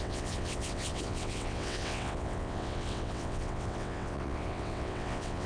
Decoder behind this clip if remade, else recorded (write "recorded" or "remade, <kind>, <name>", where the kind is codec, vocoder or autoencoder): remade, vocoder, WaveNeXt